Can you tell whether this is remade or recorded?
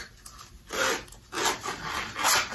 recorded